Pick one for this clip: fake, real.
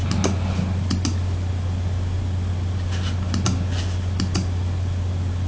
real